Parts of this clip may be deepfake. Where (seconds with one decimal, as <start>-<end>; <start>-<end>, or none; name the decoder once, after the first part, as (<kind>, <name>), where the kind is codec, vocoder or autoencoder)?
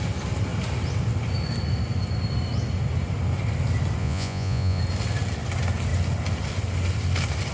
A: 4.0-4.8 (vocoder, Vocos)